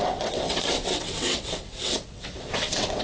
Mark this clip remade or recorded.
remade